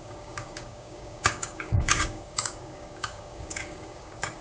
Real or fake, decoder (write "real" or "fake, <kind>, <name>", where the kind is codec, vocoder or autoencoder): fake, codec, DAC